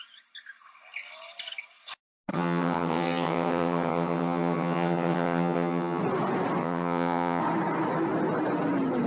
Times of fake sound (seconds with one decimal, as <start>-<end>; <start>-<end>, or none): 2.3-6.0; 6.6-7.4